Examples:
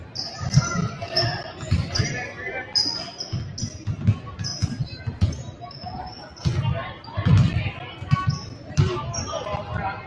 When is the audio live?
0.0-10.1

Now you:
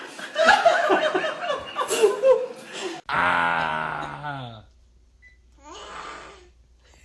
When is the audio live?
0.0-7.0

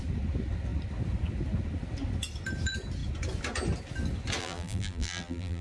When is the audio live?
0.0-4.4

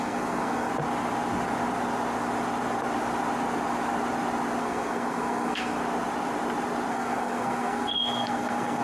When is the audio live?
0.7-4.6; 5.8-6.9

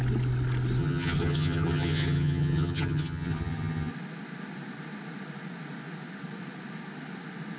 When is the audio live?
0.0-0.8; 3.9-7.6

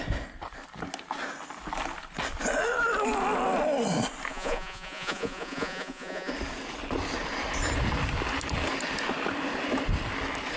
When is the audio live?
0.0-4.3; 6.3-10.6

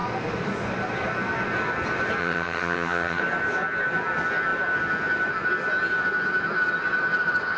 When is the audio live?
0.0-2.2; 3.2-7.6

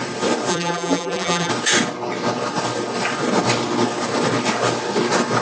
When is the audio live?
0.0-0.5; 1.5-5.4